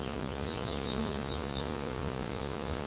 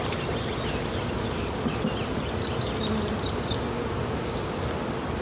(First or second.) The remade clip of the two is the first